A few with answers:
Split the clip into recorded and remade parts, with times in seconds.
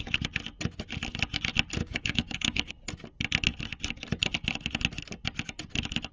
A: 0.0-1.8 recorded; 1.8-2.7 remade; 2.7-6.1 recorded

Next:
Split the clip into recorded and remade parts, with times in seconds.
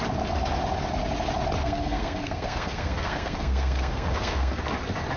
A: 0.0-1.6 recorded; 1.6-4.6 remade; 4.6-5.2 recorded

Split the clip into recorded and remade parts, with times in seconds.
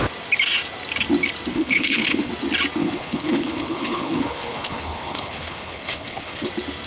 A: 0.0-1.5 recorded; 1.5-2.3 remade; 2.3-2.8 recorded; 2.8-6.5 remade; 6.5-6.9 recorded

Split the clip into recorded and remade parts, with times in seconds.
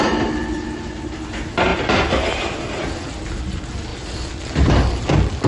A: 0.0-1.7 recorded; 1.7-3.1 remade; 3.1-3.9 recorded; 3.9-5.0 remade; 5.0-5.5 recorded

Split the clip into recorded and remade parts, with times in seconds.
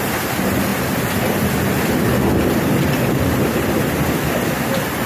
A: 0.0-0.7 remade; 0.7-3.7 recorded; 3.7-5.1 remade